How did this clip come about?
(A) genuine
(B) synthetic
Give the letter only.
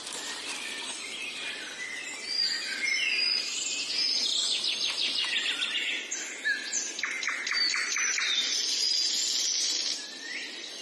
A